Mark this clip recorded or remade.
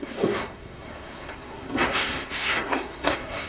remade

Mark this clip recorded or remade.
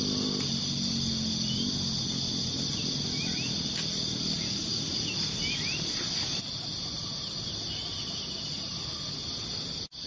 recorded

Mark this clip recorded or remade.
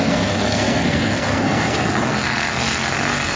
remade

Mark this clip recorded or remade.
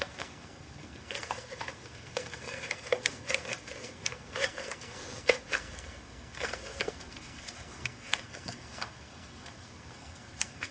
remade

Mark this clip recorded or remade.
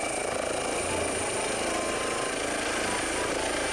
recorded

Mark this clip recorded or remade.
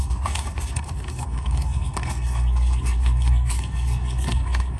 remade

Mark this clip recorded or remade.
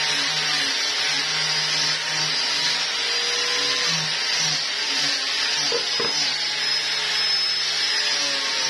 recorded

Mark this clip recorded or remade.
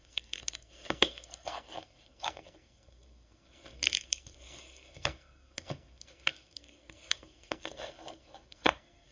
remade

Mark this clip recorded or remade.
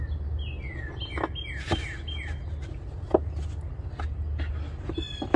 recorded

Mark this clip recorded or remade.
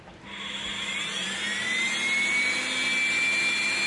recorded